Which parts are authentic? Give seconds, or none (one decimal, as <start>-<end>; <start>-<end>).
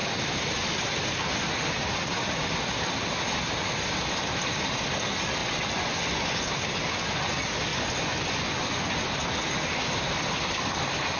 0.0-5.4; 6.4-7.7; 9.1-11.2